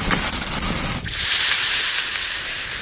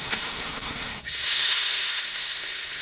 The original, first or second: first